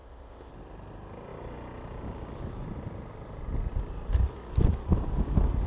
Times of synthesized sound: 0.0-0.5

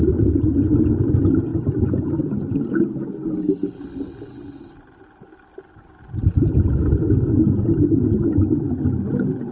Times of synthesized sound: none

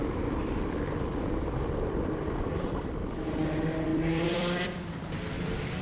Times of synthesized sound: 0.0-3.3; 3.9-4.8

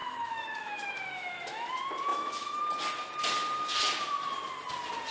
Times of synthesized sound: 0.0-1.7; 2.1-2.6

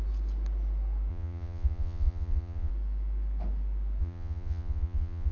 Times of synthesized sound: 1.1-2.7; 4.0-5.3

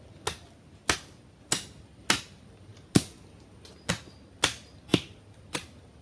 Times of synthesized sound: none

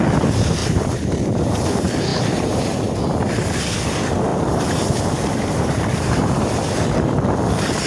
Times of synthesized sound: 0.6-1.6; 2.1-2.6; 4.3-6.5